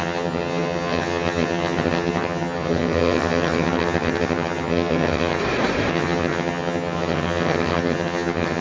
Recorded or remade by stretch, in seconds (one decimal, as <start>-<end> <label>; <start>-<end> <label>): 0.0-5.4 remade; 5.4-5.9 recorded; 5.9-8.6 remade

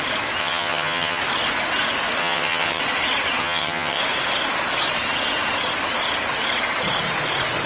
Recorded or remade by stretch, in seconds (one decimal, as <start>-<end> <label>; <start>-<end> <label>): 0.0-0.4 recorded; 0.4-1.2 remade; 1.2-2.2 recorded; 2.2-2.8 remade; 2.8-3.4 recorded; 3.4-4.0 remade; 4.0-7.7 recorded

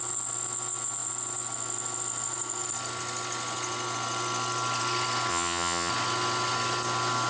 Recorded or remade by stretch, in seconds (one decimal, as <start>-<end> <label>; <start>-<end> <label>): 0.0-5.3 recorded; 5.3-5.9 remade; 5.9-7.3 recorded

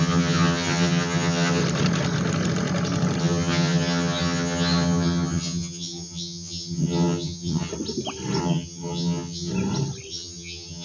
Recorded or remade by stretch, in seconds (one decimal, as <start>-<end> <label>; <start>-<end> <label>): 0.0-1.6 remade; 1.6-3.2 recorded; 3.2-7.7 remade; 7.7-8.4 recorded; 8.4-9.5 remade; 9.5-10.1 recorded; 10.1-10.8 remade

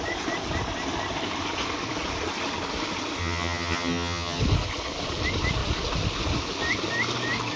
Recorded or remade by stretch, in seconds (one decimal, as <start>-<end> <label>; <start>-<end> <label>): 0.0-3.2 recorded; 3.2-4.4 remade; 4.4-7.6 recorded

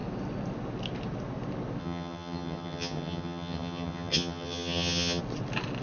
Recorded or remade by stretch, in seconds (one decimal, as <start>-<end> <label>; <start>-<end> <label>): 0.0-1.8 recorded; 1.8-5.2 remade; 5.2-5.8 recorded